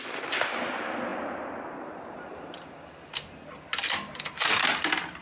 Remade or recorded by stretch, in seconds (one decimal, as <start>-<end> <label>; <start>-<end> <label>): 0.0-5.2 recorded